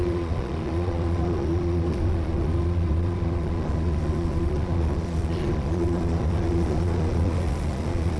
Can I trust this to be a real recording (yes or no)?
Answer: no